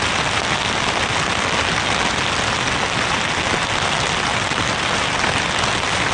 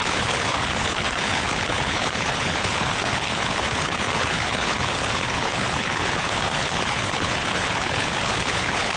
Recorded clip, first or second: first